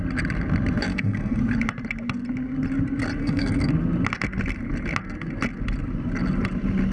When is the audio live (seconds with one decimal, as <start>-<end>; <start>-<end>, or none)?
0.0-0.9; 1.4-3.2; 3.7-6.9